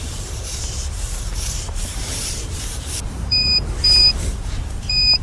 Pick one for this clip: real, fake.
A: fake